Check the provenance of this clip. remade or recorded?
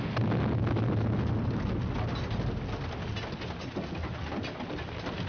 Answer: recorded